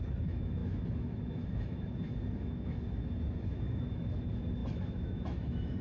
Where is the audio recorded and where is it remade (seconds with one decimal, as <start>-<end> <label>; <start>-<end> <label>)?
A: 0.0-5.8 remade